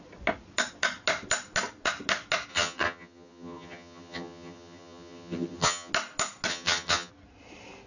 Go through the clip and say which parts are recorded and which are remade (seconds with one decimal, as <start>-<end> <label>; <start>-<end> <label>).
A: 0.0-2.5 recorded; 2.5-5.9 remade; 5.9-6.5 recorded; 6.5-7.1 remade; 7.1-7.9 recorded